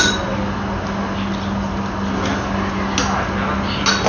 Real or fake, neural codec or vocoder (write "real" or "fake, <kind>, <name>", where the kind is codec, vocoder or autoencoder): real